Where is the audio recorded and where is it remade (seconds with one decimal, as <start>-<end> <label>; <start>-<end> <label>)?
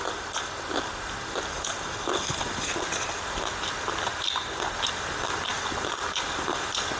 0.0-7.0 recorded